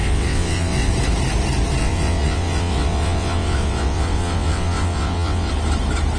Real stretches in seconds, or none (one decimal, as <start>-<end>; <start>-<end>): 0.9-1.8; 5.5-6.2